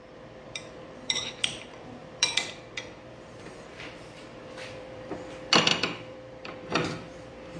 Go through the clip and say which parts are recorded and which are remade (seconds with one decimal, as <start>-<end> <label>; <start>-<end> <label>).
0.0-7.6 remade